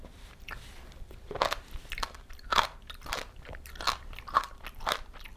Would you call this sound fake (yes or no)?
yes